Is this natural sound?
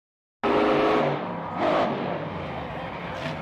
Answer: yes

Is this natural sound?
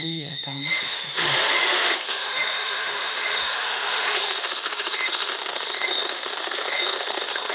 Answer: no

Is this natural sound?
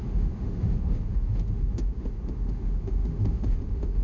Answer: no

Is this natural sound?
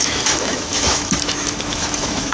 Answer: no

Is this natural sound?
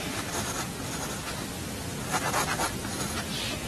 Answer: yes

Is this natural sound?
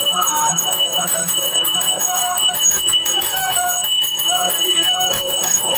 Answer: no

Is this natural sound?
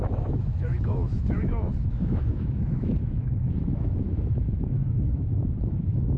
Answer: no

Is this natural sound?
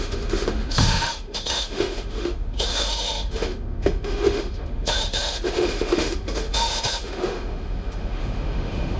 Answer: no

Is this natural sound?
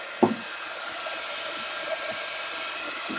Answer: yes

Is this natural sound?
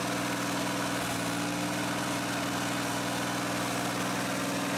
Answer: yes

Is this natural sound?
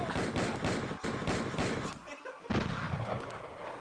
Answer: yes